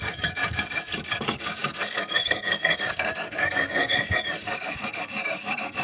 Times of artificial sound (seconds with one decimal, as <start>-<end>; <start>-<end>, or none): 0.0-5.8